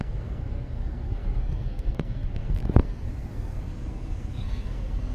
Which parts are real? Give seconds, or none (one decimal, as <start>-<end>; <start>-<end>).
none